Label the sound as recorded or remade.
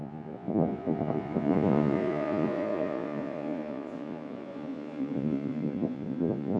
remade